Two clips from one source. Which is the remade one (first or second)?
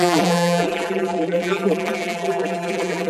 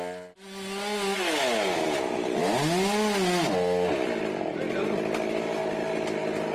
first